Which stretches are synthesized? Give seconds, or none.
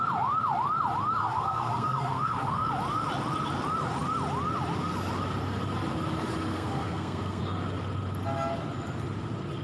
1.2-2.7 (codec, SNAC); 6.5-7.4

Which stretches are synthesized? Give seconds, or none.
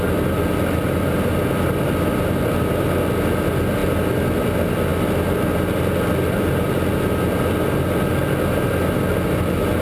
none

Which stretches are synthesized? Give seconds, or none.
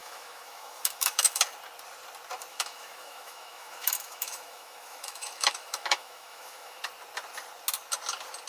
0.0-1.4 (autoencoder, DAC-VAE); 2.5-6.8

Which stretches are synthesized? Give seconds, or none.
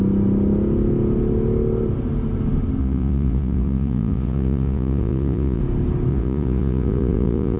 2.8-5.6 (vocoder, Vocos); 6.1-7.6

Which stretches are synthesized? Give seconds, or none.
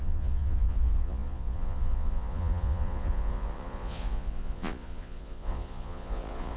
0.0-6.6 (vocoder, Vocos)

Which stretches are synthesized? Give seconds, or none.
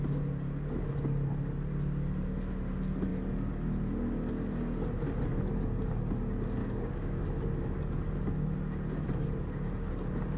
6.6-7.2 (codec, DAC)